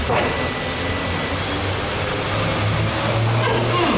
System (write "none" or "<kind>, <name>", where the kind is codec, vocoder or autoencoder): none